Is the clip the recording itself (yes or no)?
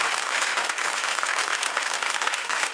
no